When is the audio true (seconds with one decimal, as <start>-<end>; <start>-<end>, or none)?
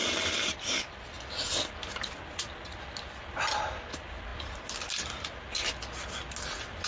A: 0.0-6.9